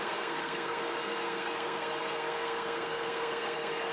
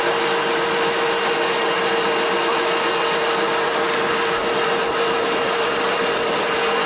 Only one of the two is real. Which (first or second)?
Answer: second